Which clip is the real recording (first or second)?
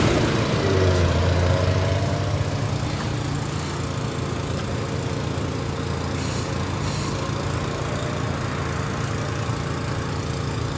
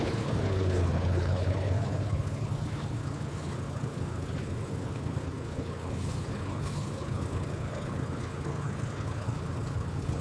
first